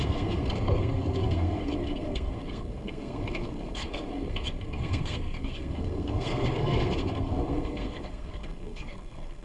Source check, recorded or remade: remade